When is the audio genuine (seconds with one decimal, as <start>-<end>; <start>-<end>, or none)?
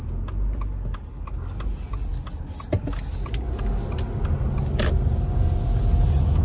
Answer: 0.0-6.4